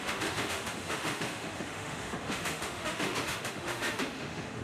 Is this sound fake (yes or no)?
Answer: yes